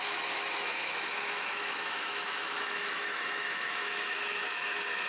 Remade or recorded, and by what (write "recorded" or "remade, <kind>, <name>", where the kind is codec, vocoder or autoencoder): remade, autoencoder, DAC-VAE